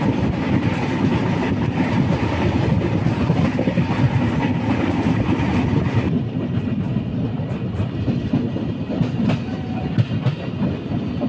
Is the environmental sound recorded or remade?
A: recorded